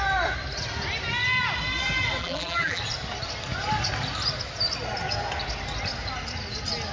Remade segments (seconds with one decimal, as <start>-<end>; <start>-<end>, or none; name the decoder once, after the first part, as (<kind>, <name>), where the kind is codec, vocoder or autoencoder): 2.2-2.8 (vocoder, BigVGAN v2)